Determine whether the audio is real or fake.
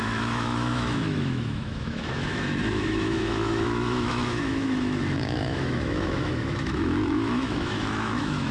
fake